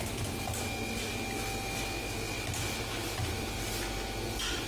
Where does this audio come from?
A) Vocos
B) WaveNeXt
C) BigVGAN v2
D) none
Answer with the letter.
D